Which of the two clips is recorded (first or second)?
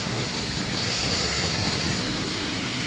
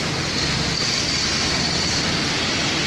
second